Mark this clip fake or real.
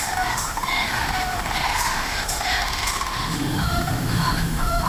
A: fake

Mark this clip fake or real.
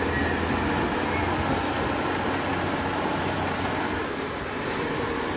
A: real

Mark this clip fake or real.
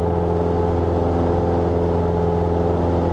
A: real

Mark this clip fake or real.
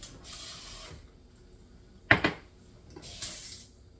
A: real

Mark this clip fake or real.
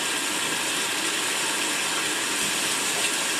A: real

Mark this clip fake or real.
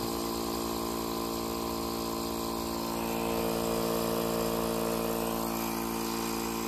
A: real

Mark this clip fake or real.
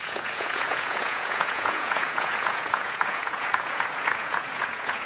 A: fake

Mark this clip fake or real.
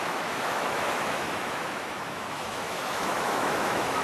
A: fake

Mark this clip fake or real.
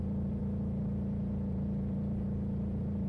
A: fake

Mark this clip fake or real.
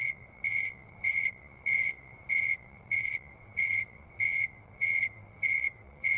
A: fake